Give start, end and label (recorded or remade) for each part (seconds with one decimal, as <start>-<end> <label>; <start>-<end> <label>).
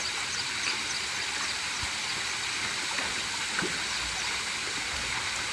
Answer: 0.0-5.5 recorded